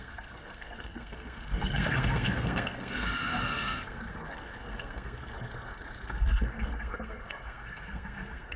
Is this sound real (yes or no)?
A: no